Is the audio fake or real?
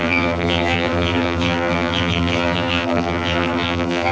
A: fake